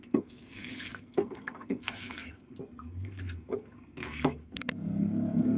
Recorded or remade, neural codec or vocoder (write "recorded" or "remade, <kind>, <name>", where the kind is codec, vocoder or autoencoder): remade, codec, SNAC